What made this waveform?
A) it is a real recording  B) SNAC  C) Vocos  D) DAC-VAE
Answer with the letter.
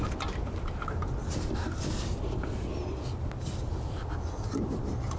A